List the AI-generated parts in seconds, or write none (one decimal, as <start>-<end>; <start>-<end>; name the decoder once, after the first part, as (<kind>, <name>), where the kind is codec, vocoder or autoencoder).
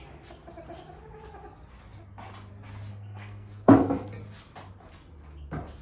2.9-4.1 (codec, SNAC)